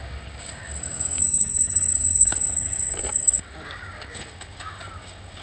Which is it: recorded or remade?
remade